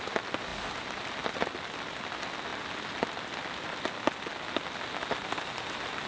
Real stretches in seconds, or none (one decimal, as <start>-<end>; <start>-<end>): 0.0-6.1